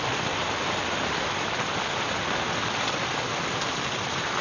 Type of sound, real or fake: real